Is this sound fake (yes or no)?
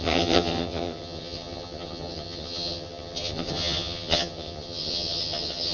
yes